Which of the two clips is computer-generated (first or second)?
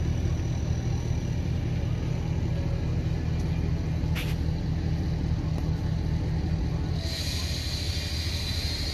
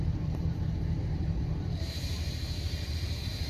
second